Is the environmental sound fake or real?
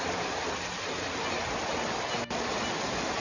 real